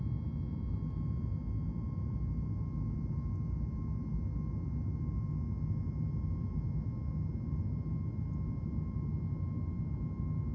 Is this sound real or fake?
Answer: real